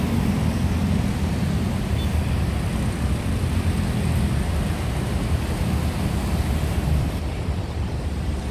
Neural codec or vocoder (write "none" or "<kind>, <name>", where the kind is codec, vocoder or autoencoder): none